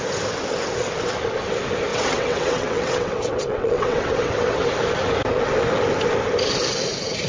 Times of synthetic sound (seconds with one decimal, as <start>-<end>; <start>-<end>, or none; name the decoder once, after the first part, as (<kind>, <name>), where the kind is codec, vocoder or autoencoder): 1.9-4.7 (vocoder, WaveNeXt)